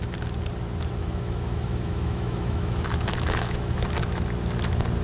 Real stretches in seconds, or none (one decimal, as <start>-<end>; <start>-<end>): 0.0-1.0; 3.9-5.0